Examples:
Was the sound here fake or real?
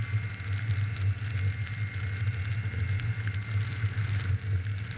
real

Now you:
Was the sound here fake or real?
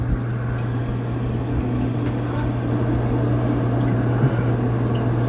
real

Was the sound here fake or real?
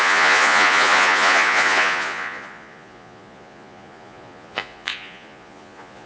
fake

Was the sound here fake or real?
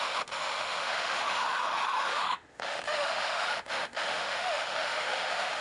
fake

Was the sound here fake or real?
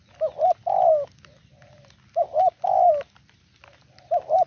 real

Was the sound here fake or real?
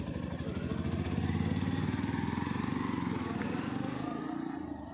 real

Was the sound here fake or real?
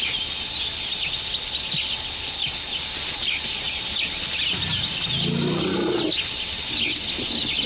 real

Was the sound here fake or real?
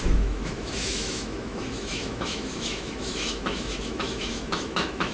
fake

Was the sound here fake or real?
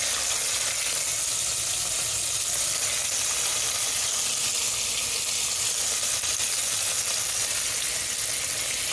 real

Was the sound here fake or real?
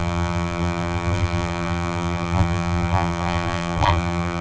fake